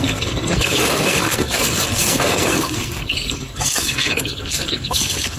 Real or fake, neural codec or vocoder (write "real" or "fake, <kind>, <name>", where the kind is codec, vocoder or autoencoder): fake, codec, SNAC